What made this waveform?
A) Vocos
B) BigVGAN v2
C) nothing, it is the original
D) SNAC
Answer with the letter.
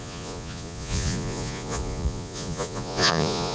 A